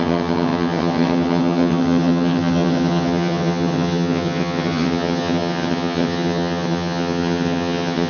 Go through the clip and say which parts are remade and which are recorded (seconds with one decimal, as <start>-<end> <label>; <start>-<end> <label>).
0.0-8.1 remade